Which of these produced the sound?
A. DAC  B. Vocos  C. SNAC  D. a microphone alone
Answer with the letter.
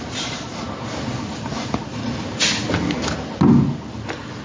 D